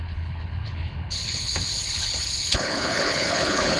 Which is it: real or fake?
fake